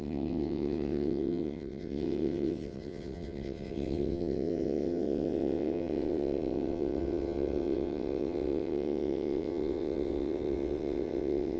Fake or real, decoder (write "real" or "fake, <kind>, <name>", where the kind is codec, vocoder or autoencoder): fake, vocoder, WaveNeXt